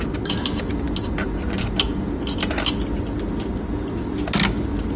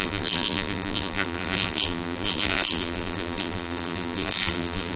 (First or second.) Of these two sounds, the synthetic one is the second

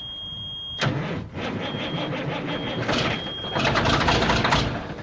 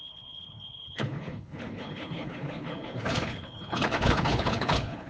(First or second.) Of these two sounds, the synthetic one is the second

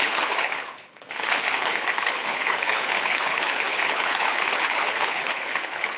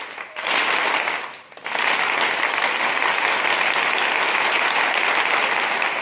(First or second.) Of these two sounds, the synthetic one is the first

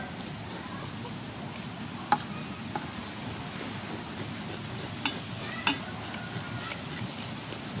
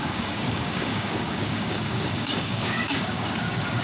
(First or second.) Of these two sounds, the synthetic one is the second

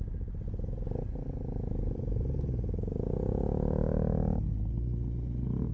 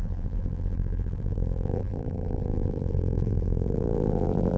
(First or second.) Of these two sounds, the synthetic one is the second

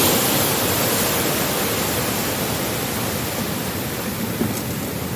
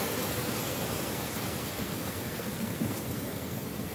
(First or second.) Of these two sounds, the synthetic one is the second